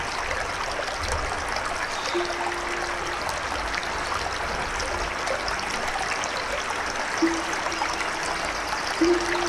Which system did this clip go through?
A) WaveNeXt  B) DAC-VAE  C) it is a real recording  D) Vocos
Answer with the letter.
C